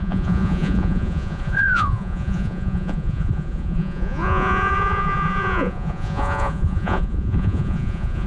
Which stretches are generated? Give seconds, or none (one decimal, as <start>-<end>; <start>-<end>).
0.0-8.3